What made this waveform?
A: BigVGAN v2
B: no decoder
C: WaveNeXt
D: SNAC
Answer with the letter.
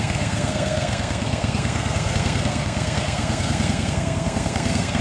D